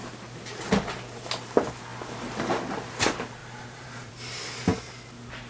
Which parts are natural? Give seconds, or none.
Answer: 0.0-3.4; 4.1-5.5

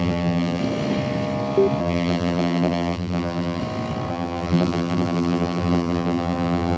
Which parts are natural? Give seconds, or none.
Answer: 0.6-1.8; 3.6-4.1

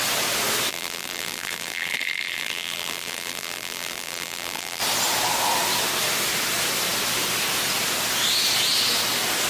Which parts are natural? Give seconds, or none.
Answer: 0.0-0.7; 4.8-9.5

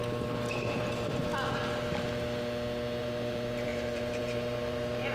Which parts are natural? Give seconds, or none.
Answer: 0.0-0.5; 1.3-3.0

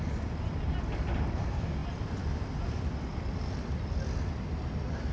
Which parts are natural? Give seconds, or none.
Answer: 0.0-1.8; 4.3-5.1